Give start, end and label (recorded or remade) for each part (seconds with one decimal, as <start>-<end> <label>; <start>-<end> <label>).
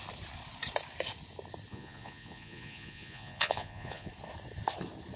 0.0-1.7 recorded; 1.7-4.1 remade; 4.1-5.2 recorded